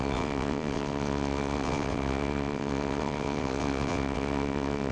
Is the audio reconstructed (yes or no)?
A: yes